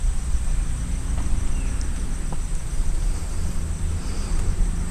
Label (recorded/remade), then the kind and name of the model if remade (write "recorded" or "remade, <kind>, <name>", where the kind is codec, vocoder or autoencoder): recorded